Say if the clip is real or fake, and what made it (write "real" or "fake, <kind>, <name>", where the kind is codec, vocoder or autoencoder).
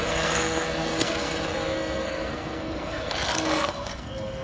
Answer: fake, codec, SNAC